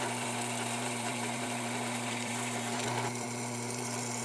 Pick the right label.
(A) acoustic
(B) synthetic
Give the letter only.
B